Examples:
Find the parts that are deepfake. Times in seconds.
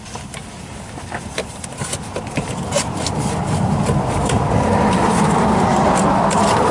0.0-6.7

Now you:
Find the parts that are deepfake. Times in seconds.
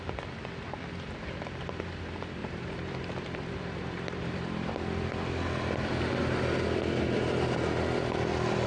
2.4-4.7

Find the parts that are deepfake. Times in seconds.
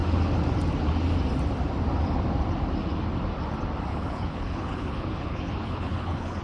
3.9-6.4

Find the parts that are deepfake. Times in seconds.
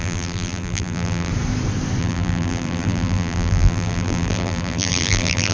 0.0-1.3; 2.0-5.5